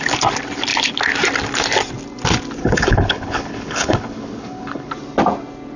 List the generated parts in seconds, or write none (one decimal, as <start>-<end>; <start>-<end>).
2.6-4.9

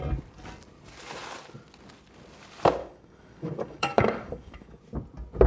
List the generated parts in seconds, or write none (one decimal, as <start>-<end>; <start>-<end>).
2.8-4.8

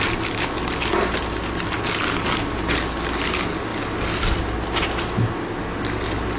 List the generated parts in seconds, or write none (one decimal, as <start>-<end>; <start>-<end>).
none

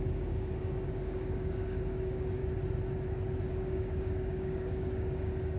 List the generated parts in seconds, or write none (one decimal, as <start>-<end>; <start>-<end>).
0.0-2.4; 3.5-5.6

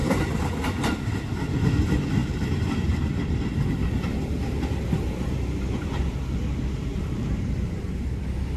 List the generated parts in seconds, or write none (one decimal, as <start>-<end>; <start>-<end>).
0.0-0.5; 6.9-7.4

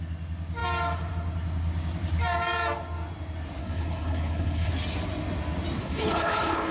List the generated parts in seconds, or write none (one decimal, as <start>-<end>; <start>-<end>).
3.6-4.7; 5.8-6.7

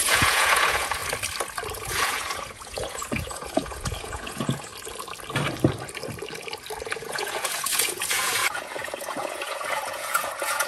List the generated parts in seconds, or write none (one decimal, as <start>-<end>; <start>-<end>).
0.0-1.0; 1.7-4.7; 6.8-10.7